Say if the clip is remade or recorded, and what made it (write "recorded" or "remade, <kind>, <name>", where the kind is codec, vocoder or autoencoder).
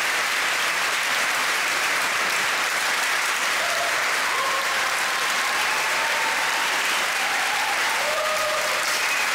remade, vocoder, BigVGAN v2